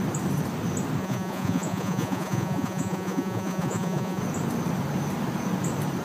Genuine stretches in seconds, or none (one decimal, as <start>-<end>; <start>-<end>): 0.0-1.0; 4.2-6.0